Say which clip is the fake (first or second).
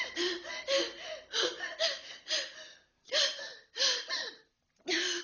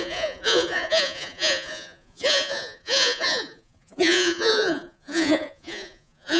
second